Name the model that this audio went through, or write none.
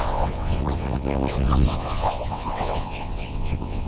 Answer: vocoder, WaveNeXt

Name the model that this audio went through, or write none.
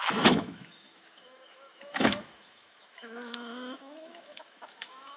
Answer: autoencoder, DAC-VAE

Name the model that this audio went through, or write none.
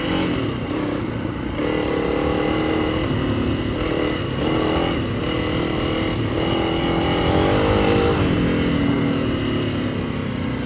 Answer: none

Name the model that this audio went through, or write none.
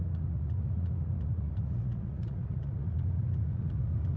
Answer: vocoder, Vocos